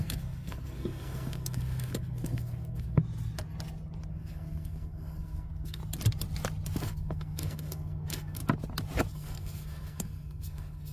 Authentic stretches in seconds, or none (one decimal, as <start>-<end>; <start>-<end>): 3.0-4.1; 5.8-6.8; 8.4-9.1